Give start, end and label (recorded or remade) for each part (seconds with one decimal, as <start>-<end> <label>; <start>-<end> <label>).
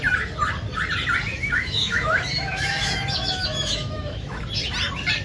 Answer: 0.0-1.3 recorded; 1.3-4.4 remade; 4.4-5.2 recorded